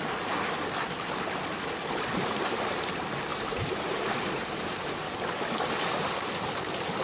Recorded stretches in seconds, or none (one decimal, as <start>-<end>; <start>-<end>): 0.0-3.3; 5.1-7.0